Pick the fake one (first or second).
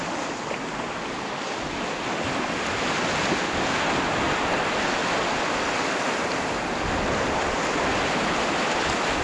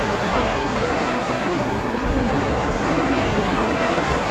second